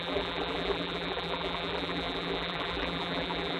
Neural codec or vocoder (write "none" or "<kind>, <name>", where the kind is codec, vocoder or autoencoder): vocoder, BigVGAN v2